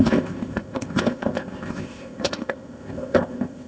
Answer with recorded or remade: remade